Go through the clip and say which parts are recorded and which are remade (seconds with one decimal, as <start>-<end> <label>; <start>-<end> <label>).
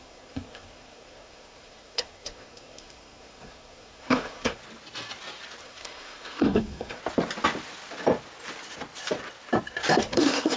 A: 0.0-4.6 remade; 4.6-5.6 recorded; 5.6-7.0 remade; 7.0-10.0 recorded; 10.0-10.6 remade